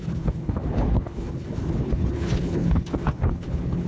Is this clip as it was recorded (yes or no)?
no